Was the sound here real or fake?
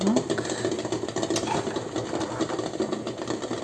real